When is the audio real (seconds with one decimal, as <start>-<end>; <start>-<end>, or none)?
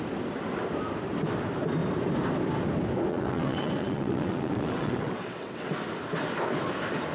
0.0-3.1; 5.7-7.1